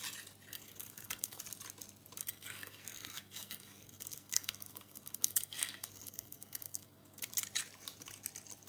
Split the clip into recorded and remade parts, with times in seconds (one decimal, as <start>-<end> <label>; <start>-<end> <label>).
0.0-0.5 recorded; 0.5-1.4 remade; 1.4-2.2 recorded; 2.2-7.3 remade; 7.3-8.7 recorded